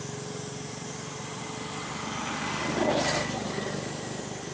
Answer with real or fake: real